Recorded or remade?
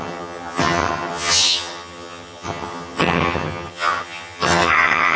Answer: remade